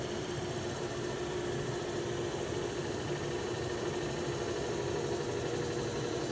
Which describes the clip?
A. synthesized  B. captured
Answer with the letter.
B